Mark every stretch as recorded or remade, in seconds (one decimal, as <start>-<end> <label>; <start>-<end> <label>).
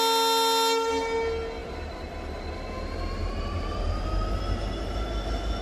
0.0-1.6 recorded; 1.6-2.4 remade; 2.4-3.2 recorded; 3.2-5.1 remade; 5.1-5.6 recorded